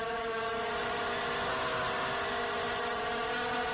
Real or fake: real